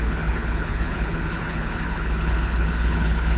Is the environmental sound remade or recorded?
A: remade